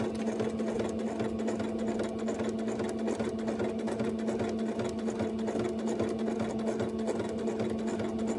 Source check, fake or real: real